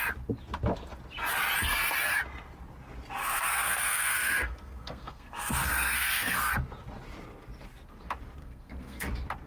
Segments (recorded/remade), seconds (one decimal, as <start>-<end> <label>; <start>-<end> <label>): 0.0-3.2 recorded; 3.2-6.5 remade; 6.5-8.4 recorded; 8.4-9.1 remade; 9.1-9.5 recorded